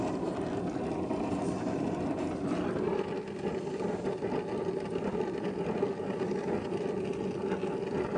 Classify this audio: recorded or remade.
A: recorded